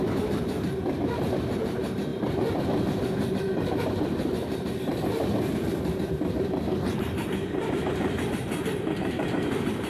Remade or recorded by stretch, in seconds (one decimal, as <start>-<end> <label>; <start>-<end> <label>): 0.0-9.9 remade

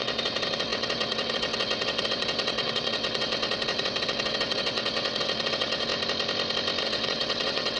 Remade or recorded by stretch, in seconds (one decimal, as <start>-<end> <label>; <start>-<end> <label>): 0.0-5.9 remade; 5.9-6.8 recorded; 6.8-7.8 remade

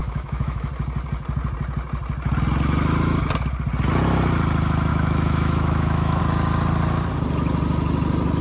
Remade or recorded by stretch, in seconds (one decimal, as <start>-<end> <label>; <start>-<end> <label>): 0.0-0.7 remade; 0.7-4.9 recorded; 4.9-6.2 remade; 6.2-8.4 recorded

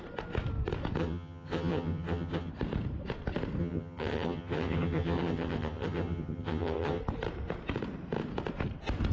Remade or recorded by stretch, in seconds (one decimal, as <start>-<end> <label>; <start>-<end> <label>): 0.0-1.0 recorded; 1.0-2.5 remade; 2.5-3.6 recorded; 3.6-7.0 remade; 7.0-9.1 recorded